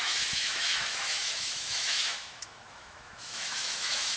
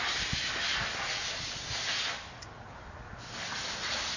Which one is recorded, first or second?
second